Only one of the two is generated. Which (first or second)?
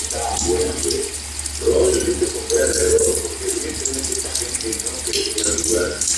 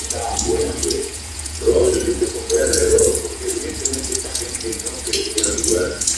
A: second